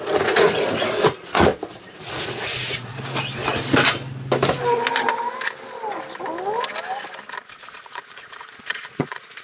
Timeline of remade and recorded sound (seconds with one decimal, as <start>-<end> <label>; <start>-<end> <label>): 0.0-1.5 remade; 1.5-2.0 recorded; 2.0-2.9 remade; 2.9-7.8 recorded; 7.8-9.4 remade